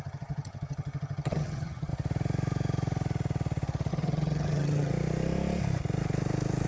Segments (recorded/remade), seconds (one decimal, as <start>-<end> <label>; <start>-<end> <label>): 0.0-1.9 remade; 1.9-3.9 recorded; 3.9-4.9 remade; 4.9-6.7 recorded